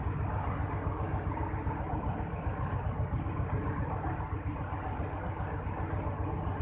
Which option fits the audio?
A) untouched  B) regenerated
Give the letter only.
A